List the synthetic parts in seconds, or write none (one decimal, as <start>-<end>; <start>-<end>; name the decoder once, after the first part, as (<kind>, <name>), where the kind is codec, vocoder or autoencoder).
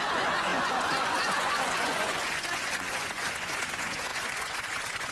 0.0-5.1 (vocoder, Vocos)